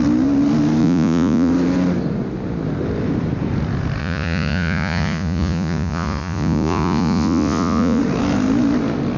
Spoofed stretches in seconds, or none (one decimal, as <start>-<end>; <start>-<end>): 0.8-1.5; 4.0-8.0